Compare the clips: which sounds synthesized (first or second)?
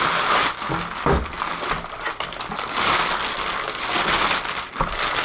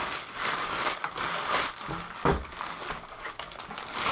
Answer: second